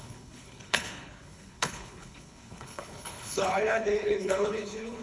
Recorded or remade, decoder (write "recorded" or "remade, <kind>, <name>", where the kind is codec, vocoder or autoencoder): remade, codec, HILCodec